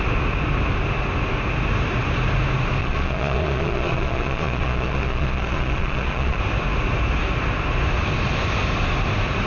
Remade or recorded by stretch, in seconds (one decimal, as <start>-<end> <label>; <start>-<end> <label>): 0.0-2.8 recorded; 2.8-6.4 remade; 6.4-9.5 recorded